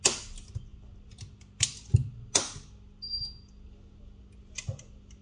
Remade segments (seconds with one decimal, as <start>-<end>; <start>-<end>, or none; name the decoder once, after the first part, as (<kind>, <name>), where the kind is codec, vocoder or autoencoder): none